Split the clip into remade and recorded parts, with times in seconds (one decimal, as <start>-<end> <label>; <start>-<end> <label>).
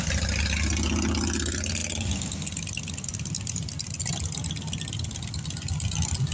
0.0-6.3 recorded